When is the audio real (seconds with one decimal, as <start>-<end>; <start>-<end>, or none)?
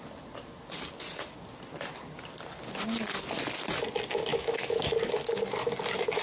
0.0-4.3; 4.8-6.2